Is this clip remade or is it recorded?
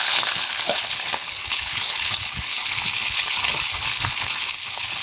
remade